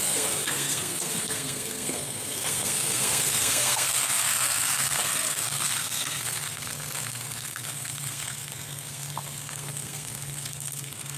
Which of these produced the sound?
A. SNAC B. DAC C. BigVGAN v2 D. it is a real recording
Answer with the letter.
A